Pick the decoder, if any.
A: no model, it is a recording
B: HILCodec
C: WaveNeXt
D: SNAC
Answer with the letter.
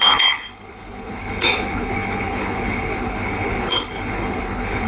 B